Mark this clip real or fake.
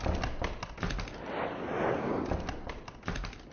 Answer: real